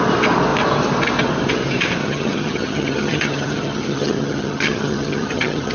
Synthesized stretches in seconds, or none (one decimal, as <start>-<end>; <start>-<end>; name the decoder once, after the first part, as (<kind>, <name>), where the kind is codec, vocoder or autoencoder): 2.0-5.7 (vocoder, HiFi-GAN)